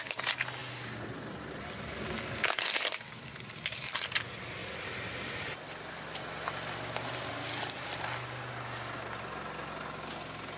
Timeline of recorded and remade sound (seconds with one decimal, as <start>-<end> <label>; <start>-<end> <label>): 0.0-4.6 recorded; 4.6-5.6 remade; 5.6-10.6 recorded